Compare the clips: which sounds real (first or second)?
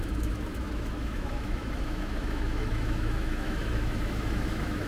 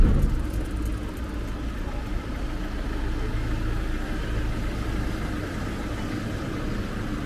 second